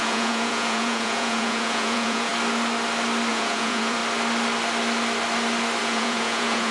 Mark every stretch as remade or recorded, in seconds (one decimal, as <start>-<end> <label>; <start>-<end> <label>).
0.0-2.3 remade; 2.3-3.3 recorded; 3.3-4.0 remade; 4.0-5.8 recorded; 5.8-6.7 remade